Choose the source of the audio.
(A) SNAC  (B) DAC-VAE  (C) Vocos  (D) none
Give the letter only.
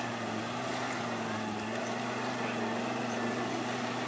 D